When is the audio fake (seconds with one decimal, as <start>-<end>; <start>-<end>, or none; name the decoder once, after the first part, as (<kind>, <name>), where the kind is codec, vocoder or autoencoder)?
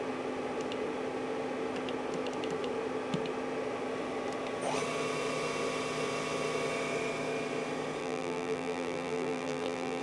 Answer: 8.0-10.0 (vocoder, BigVGAN v2)